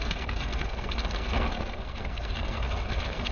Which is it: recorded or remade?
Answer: remade